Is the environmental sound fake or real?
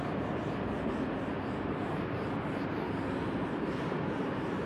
real